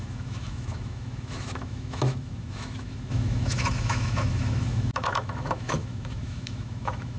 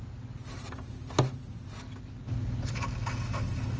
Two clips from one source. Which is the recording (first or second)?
second